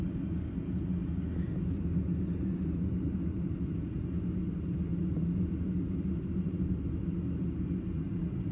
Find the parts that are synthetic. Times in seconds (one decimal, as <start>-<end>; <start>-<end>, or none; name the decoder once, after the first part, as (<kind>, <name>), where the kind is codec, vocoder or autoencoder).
none